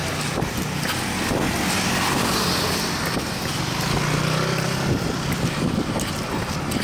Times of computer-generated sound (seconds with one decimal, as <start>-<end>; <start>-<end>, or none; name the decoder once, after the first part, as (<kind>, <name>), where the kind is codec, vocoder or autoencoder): none